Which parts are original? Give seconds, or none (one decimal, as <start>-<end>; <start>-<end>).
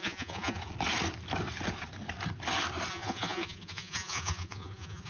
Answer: 0.6-2.9